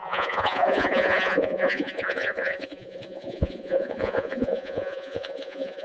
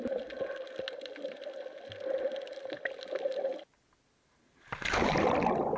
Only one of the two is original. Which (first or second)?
second